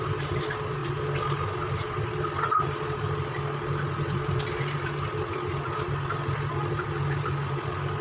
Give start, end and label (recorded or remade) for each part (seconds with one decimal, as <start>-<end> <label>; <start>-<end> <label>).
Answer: 0.0-8.0 recorded